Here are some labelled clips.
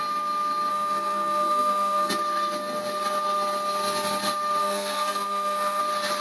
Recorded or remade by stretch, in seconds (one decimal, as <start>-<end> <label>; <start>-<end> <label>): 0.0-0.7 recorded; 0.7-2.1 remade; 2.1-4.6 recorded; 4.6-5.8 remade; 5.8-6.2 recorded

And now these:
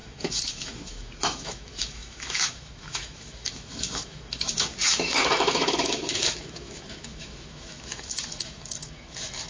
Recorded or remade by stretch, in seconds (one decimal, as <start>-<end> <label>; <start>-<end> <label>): 0.0-9.5 remade

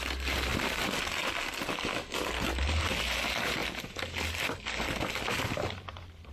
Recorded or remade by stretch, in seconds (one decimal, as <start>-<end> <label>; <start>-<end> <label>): 0.0-6.3 recorded